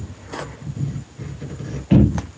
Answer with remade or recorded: recorded